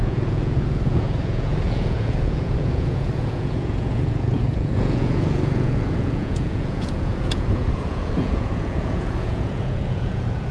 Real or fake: fake